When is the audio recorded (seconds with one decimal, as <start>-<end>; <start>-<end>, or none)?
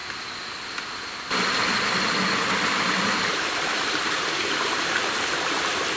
0.0-3.3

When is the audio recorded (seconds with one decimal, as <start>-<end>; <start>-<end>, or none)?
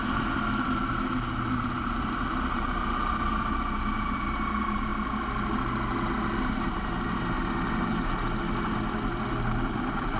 4.9-9.3